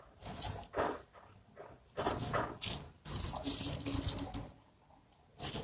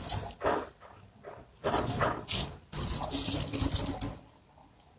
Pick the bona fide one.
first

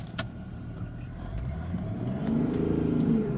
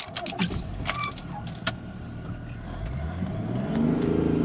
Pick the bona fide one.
second